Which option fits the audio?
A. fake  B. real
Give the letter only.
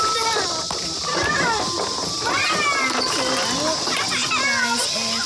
B